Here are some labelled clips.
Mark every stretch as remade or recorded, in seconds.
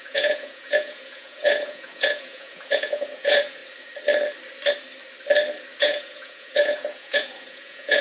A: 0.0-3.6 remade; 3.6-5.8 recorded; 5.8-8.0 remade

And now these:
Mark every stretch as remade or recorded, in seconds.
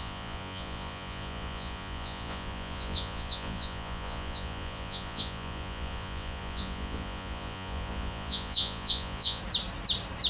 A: 0.0-9.4 remade; 9.4-10.3 recorded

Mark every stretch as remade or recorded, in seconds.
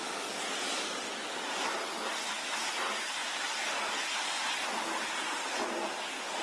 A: 0.0-6.4 recorded